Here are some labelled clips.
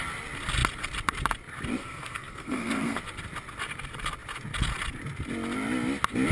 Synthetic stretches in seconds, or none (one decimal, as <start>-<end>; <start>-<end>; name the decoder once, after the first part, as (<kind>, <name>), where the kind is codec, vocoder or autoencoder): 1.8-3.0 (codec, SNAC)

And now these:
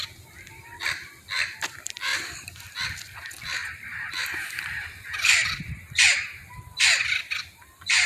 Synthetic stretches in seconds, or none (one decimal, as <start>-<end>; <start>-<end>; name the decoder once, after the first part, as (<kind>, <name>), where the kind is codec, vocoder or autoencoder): 0.0-8.1 (vocoder, BigVGAN v2)

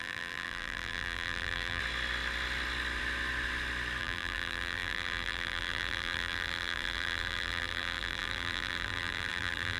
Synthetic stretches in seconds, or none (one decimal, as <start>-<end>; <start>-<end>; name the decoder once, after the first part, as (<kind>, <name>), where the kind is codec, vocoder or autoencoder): 0.0-1.8 (vocoder, BigVGAN v2); 4.0-9.8

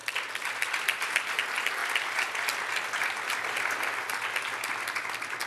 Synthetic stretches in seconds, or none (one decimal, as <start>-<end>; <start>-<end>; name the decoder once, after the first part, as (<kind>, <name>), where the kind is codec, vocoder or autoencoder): none